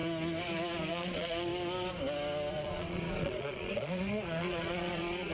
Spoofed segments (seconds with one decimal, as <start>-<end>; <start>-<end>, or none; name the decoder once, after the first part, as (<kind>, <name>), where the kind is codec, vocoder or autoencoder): 0.9-1.5 (vocoder, Vocos); 2.5-5.3